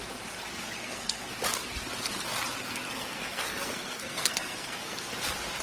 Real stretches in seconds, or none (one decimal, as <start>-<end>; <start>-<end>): 0.0-0.8; 1.3-2.6; 5.1-5.6